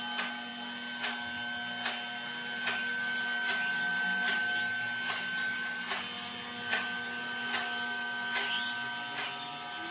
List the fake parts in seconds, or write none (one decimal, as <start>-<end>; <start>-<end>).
none